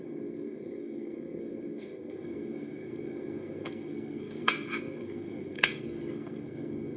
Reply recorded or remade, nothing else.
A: remade